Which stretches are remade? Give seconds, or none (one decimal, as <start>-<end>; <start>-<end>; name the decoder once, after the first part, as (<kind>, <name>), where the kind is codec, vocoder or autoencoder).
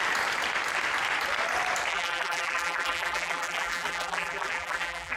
1.9-5.2 (vocoder, BigVGAN v2)